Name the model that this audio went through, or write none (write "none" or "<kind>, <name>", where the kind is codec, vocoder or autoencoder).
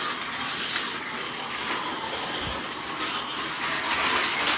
none